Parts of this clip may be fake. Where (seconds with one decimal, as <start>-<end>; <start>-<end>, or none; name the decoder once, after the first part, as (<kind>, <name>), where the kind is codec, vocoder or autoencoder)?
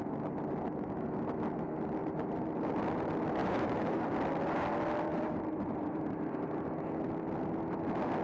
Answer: 2.0-2.7 (vocoder, BigVGAN v2); 3.4-4.0; 5.1-6.7